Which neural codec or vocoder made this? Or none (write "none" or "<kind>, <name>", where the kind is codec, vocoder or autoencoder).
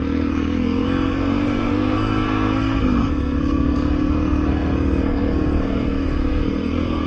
codec, SNAC